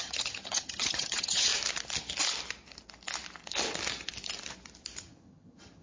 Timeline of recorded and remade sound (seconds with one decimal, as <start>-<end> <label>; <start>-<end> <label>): 0.0-1.5 remade; 1.5-5.0 recorded; 5.0-5.8 remade